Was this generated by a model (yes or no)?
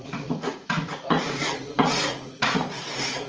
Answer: yes